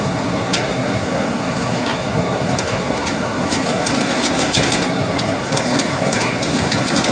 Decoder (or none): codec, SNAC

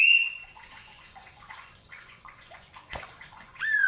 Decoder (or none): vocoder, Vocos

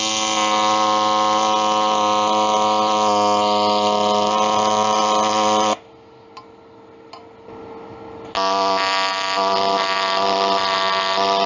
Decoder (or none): none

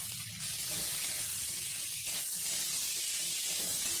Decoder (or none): none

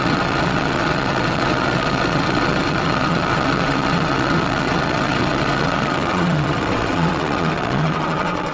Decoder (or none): vocoder, WaveNeXt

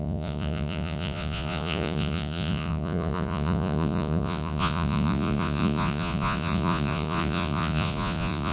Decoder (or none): vocoder, Vocos